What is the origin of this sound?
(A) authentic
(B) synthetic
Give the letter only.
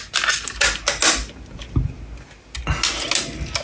A